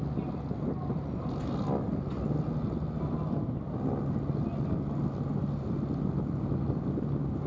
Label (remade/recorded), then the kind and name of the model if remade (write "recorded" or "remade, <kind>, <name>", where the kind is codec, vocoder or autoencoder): recorded